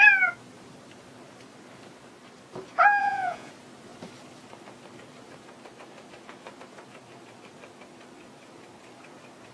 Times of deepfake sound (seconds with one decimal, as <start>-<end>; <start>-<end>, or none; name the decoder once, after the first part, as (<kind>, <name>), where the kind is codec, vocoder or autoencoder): 3.0-3.5 (vocoder, Vocos)